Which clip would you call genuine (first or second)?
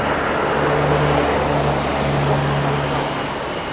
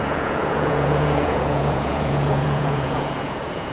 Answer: first